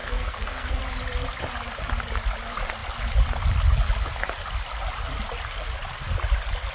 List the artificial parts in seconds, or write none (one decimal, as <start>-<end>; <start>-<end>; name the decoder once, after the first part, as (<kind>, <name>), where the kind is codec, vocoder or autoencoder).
0.0-0.8 (codec, SNAC)